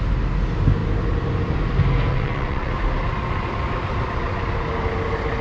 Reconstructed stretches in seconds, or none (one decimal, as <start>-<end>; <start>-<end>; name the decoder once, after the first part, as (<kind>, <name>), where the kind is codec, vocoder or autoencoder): 2.1-2.7 (vocoder, WaveNeXt)